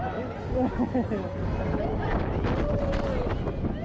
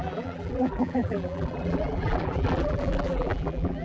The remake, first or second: second